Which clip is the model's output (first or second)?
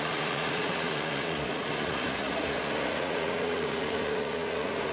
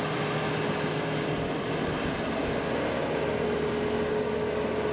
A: first